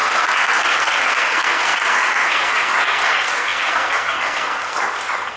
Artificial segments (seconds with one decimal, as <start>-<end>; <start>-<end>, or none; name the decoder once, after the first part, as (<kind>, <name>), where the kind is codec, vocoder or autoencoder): 0.0-5.4 (codec, SNAC)

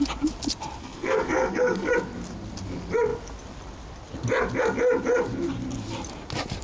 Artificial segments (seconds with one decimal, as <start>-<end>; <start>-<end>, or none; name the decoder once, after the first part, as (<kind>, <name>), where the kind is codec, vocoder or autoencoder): 0.8-1.9 (codec, SNAC)

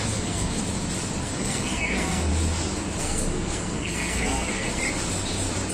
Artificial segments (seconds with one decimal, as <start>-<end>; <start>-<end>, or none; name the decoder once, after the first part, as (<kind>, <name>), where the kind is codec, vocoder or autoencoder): 0.0-0.6 (codec, SNAC); 1.2-2.3; 3.0-4.8

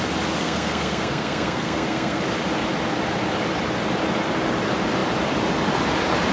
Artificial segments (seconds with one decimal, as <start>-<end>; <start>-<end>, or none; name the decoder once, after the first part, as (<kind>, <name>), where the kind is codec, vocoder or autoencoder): 0.4-2.2 (codec, SNAC)

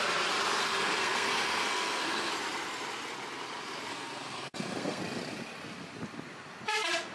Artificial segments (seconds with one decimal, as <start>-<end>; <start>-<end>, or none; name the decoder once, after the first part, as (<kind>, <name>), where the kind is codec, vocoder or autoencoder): 0.6-2.3 (codec, SNAC); 3.9-5.0